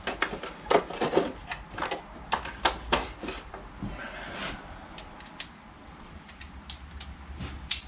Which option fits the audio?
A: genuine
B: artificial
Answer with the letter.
A